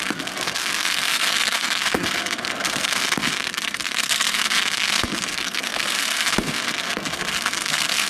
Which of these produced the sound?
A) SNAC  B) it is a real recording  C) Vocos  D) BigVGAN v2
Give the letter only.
A